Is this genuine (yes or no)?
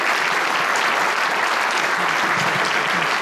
yes